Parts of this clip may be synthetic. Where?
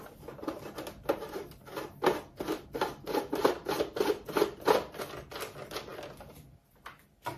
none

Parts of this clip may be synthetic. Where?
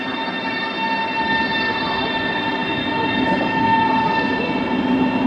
none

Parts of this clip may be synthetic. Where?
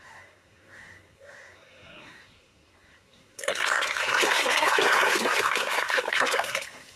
0.0-7.0